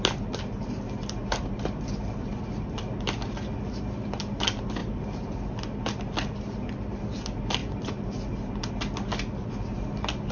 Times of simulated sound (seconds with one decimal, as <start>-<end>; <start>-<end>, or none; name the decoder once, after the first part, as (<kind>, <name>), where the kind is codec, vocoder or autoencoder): 1.3-2.9 (vocoder, BigVGAN v2); 4.8-5.4